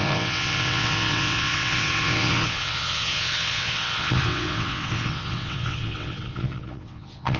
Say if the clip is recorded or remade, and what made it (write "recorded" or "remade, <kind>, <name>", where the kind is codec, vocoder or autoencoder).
remade, vocoder, WaveNeXt